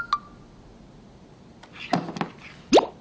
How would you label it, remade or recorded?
recorded